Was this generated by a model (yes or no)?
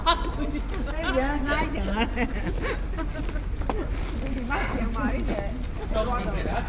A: no